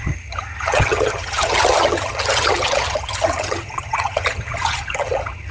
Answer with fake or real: fake